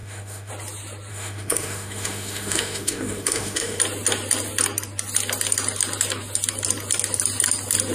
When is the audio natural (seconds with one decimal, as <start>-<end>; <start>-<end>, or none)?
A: 0.5-1.1; 3.8-7.9